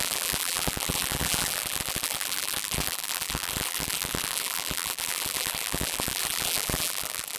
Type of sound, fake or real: fake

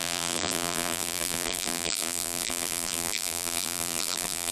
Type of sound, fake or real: fake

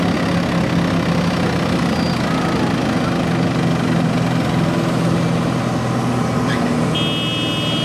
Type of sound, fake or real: real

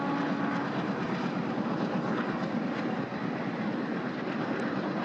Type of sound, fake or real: real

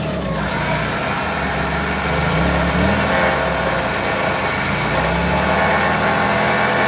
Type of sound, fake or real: real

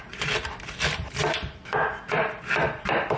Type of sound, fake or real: fake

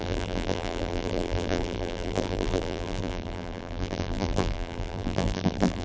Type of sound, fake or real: fake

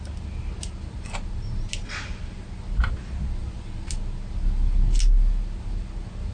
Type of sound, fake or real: real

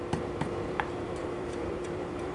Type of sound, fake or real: fake